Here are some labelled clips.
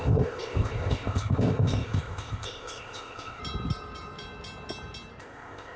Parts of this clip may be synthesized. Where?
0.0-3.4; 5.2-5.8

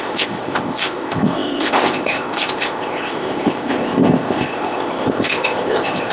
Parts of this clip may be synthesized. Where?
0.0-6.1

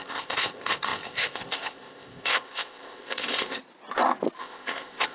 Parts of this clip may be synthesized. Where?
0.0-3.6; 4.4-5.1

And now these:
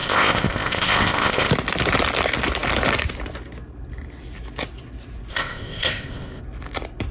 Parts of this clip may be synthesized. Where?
0.0-1.5; 5.3-6.4